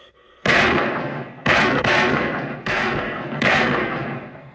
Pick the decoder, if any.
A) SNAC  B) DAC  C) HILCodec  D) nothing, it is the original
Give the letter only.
A